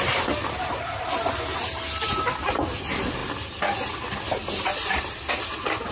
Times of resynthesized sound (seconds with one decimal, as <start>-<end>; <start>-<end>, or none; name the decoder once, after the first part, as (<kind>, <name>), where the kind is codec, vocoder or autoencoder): none